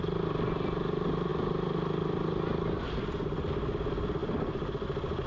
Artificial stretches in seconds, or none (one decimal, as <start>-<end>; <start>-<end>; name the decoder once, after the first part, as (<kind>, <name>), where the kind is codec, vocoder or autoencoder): 4.2-4.7 (vocoder, BigVGAN v2)